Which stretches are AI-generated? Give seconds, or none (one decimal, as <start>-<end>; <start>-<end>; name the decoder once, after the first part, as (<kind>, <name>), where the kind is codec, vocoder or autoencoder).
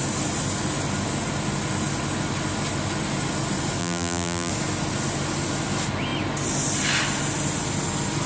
3.8-4.5 (vocoder, BigVGAN v2)